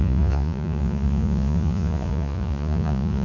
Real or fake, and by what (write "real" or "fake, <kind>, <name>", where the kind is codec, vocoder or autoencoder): fake, vocoder, Vocos